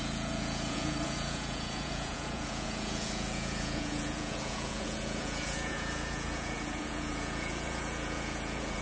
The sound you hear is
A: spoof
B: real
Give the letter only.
A